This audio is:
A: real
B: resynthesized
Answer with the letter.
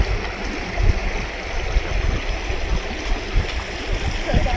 A